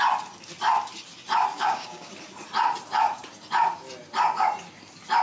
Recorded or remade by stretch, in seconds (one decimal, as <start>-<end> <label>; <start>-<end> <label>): 0.0-1.5 recorded; 1.5-2.1 remade; 2.1-5.2 recorded